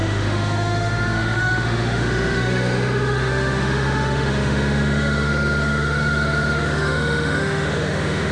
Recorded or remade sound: remade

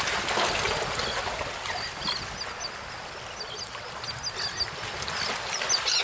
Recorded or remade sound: recorded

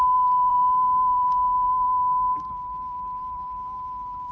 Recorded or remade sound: remade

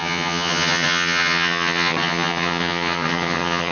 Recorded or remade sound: remade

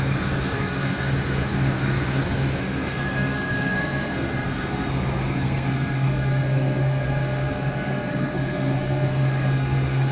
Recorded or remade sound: remade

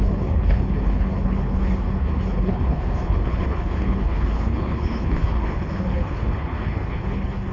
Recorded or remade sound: remade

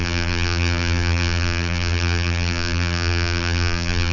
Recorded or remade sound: remade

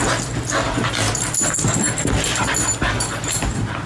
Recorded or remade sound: recorded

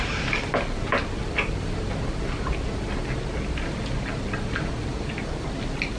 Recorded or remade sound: recorded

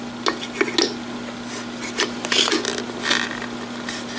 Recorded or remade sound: recorded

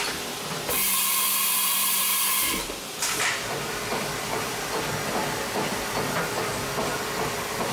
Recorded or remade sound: recorded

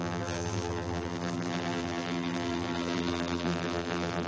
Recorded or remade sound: remade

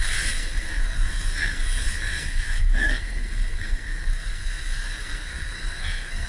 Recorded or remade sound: remade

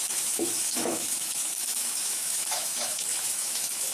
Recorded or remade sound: remade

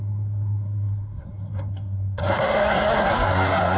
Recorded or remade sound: remade